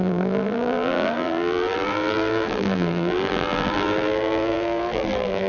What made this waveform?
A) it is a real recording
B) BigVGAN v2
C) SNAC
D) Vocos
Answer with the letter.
B